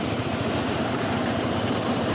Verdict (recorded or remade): recorded